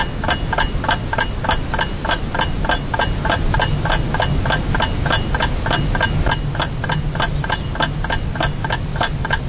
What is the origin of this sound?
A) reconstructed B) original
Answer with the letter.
B